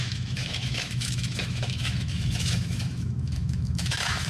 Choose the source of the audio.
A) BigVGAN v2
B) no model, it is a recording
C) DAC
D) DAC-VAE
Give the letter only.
D